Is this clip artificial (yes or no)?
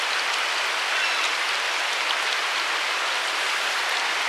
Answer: no